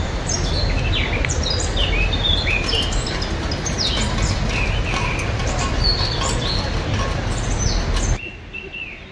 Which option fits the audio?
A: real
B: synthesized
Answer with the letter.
A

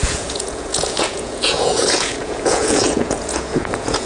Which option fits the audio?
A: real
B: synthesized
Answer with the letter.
B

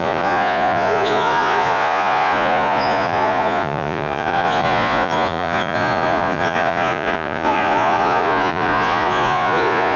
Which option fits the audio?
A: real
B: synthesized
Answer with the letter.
B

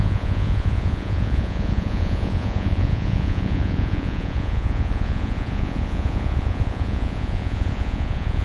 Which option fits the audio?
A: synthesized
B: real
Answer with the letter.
A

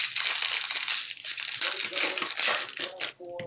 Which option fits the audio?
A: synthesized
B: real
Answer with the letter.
B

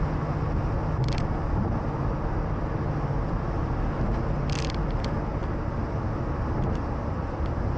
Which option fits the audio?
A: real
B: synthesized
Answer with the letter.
A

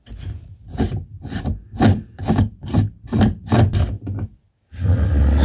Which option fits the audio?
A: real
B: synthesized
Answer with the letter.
A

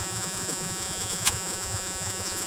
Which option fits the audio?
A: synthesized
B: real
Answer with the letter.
A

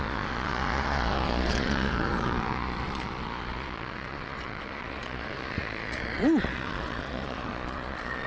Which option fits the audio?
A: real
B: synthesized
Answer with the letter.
B